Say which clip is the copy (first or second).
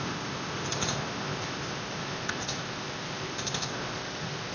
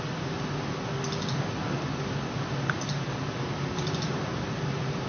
first